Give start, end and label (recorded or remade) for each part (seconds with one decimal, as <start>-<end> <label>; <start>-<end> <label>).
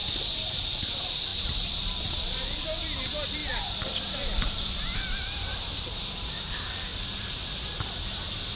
0.0-6.9 remade; 6.9-8.6 recorded